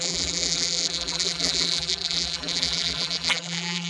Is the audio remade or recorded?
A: remade